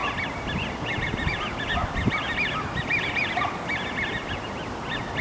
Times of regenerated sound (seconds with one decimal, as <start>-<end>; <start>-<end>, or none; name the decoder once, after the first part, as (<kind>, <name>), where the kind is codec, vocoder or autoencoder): none